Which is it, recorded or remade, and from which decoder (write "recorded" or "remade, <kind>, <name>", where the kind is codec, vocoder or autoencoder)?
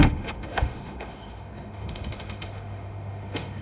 remade, autoencoder, DAC-VAE